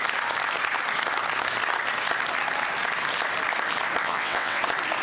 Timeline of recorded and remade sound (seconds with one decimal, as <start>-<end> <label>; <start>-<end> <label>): 0.0-4.0 recorded; 4.0-4.6 remade; 4.6-5.0 recorded